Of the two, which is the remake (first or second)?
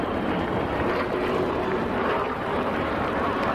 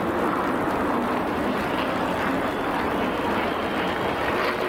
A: first